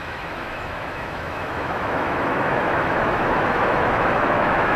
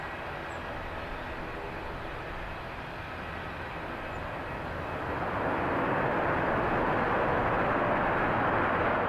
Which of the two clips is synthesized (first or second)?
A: first